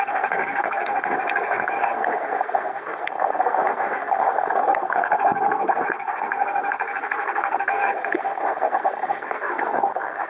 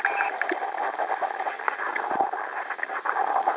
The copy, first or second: first